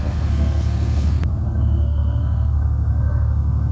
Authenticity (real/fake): fake